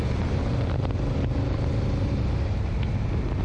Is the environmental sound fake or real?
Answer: real